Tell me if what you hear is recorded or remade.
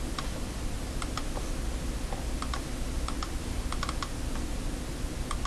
recorded